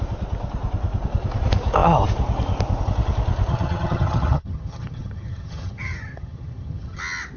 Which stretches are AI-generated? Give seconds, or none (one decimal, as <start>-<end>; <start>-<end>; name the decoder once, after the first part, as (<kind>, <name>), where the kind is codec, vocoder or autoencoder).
3.5-7.0 (vocoder, HiFi-GAN)